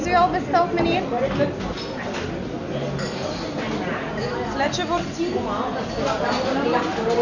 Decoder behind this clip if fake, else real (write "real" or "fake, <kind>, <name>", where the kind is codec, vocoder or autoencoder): real